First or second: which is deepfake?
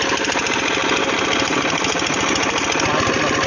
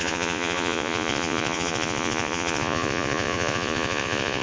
second